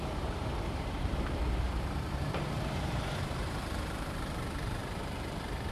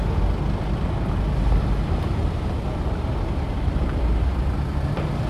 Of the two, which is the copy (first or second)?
first